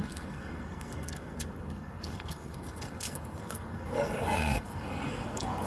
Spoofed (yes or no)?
yes